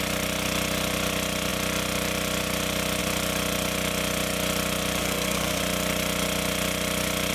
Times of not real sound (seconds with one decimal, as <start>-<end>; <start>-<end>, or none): 5.0-5.6